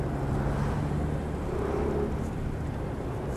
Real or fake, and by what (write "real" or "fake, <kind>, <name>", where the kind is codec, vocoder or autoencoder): real